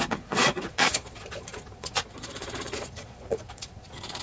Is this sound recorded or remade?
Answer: remade